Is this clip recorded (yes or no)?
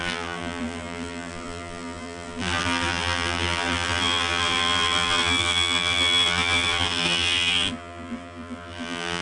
no